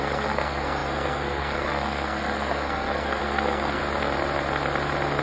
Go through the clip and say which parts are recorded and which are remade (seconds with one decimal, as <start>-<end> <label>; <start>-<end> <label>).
0.0-3.8 remade; 3.8-5.2 recorded